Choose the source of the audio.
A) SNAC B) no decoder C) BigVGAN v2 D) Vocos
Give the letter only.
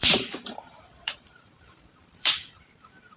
C